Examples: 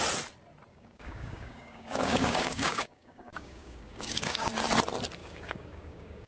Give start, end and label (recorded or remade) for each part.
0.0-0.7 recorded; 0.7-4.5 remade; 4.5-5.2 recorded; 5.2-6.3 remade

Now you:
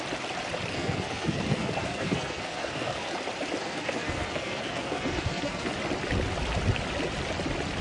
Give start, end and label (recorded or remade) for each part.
0.0-0.7 recorded; 0.7-3.1 remade; 3.1-3.6 recorded; 3.6-5.7 remade; 5.7-7.8 recorded

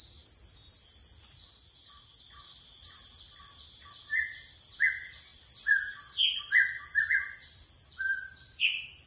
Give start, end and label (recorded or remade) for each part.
0.0-9.1 recorded

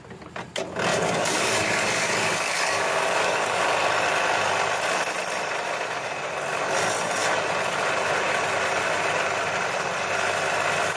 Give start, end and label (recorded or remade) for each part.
0.0-0.9 recorded; 0.9-3.6 remade; 3.6-11.0 recorded

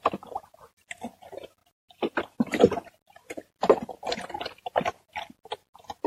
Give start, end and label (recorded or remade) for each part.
0.0-6.1 recorded